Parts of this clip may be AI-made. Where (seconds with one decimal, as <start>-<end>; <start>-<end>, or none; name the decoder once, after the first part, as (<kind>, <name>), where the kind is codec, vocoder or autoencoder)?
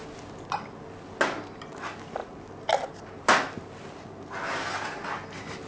none